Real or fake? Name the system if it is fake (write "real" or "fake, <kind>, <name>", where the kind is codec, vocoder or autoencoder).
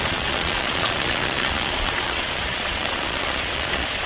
fake, vocoder, Vocos